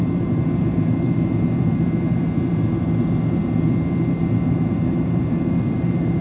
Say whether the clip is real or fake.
fake